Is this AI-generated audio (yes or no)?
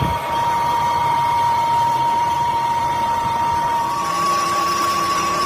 yes